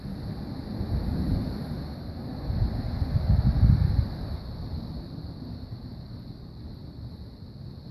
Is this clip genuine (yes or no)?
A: yes